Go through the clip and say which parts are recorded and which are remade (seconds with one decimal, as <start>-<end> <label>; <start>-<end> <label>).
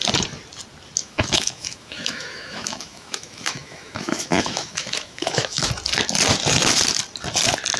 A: 0.0-1.0 recorded; 1.0-5.7 remade; 5.7-7.8 recorded